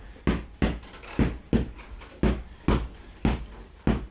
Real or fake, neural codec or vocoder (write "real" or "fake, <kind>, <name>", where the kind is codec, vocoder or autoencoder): real